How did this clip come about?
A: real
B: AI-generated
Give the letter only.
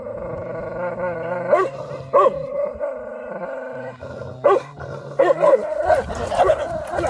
A